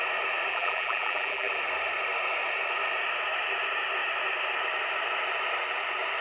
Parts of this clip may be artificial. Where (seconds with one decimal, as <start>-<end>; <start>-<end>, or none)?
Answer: 0.5-1.5